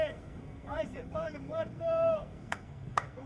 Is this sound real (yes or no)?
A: no